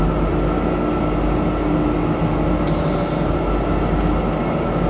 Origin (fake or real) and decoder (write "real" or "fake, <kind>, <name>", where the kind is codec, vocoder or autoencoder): real